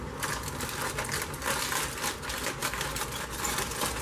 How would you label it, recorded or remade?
remade